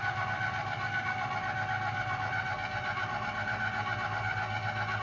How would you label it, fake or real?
real